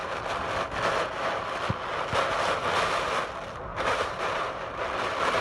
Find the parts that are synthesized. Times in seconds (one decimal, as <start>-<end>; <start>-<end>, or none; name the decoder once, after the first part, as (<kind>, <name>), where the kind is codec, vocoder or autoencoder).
3.7-4.5 (vocoder, BigVGAN v2)